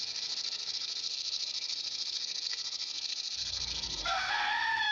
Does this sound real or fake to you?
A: fake